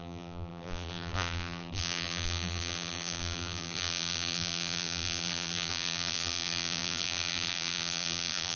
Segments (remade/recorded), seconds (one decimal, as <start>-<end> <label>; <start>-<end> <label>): 0.0-8.6 remade